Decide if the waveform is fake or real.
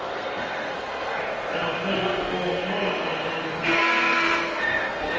fake